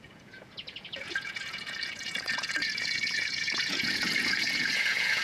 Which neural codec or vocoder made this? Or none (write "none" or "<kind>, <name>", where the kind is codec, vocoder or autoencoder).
vocoder, Vocos